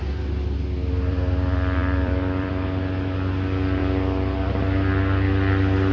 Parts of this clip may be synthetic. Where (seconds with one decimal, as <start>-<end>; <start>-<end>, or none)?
1.8-2.5